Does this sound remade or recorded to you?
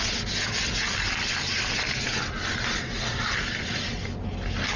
recorded